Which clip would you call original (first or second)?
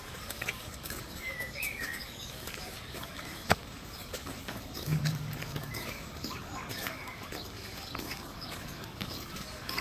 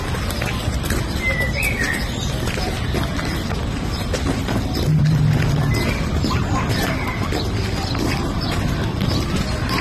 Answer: second